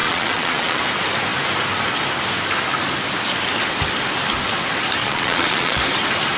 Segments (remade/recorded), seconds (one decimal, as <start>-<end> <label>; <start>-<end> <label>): 0.0-0.8 remade; 0.8-5.0 recorded; 5.0-5.8 remade; 5.8-6.4 recorded